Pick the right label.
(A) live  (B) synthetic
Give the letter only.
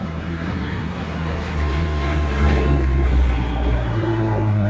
B